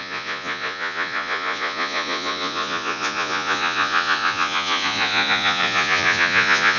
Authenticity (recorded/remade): remade